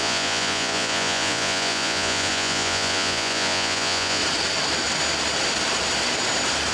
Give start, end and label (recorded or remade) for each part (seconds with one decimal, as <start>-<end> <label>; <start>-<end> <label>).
0.0-4.2 remade; 4.2-6.7 recorded